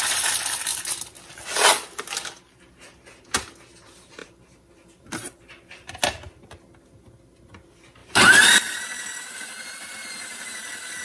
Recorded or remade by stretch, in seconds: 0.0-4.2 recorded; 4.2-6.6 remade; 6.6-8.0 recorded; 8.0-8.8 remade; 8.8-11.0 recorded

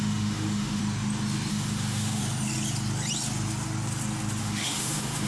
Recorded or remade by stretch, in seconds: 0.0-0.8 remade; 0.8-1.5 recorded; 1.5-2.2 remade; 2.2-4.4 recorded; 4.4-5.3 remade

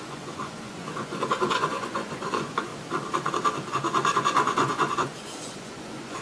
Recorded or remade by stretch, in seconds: 0.0-2.7 remade; 2.7-3.7 recorded; 3.7-6.2 remade

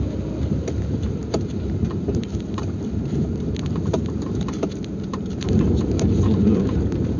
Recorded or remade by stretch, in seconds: 0.0-7.2 remade

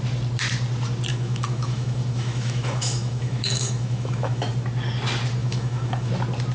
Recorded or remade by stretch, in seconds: 0.0-1.1 recorded; 1.1-4.5 remade; 4.5-5.4 recorded; 5.4-6.1 remade; 6.1-6.5 recorded

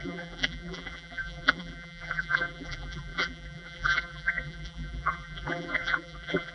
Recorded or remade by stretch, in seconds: 0.0-6.5 remade

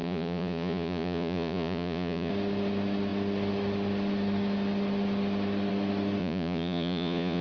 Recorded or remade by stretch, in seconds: 0.0-2.3 remade; 2.3-6.2 recorded; 6.2-7.4 remade

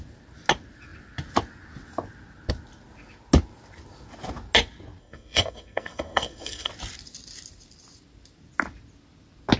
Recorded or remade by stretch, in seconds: 0.0-5.0 recorded; 5.0-6.7 remade; 6.7-9.6 recorded